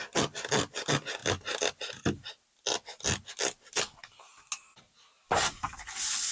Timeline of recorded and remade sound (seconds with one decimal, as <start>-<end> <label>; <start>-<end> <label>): 0.0-6.3 recorded